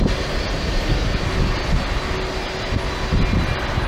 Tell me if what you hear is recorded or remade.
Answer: recorded